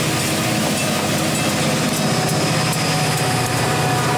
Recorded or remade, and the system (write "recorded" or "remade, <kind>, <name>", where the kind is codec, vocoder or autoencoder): recorded